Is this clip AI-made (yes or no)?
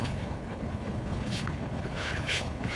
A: yes